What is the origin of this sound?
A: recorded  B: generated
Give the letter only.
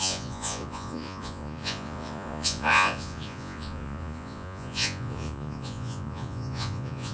B